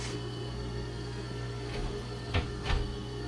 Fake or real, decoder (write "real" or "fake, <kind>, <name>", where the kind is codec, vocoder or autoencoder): fake, codec, SNAC